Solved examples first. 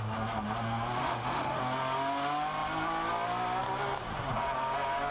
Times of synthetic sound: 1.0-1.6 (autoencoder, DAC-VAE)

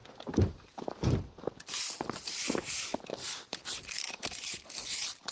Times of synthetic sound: none

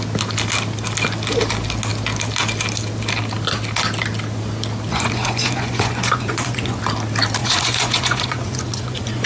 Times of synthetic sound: 4.9-6.8 (vocoder, Vocos); 7.4-9.3

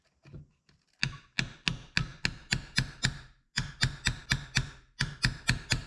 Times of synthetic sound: none

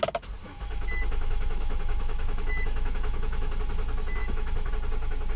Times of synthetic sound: 0.4-3.6 (autoencoder, DAC-VAE); 4.2-4.7